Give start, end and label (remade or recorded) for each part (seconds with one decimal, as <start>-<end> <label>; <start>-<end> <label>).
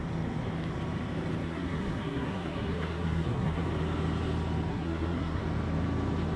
0.0-1.4 recorded; 1.4-3.7 remade; 3.7-4.7 recorded; 4.7-5.4 remade; 5.4-6.4 recorded